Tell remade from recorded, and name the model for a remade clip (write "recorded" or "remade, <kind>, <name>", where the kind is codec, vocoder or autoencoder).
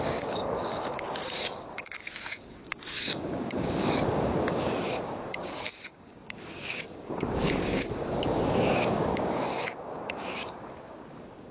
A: remade, codec, DAC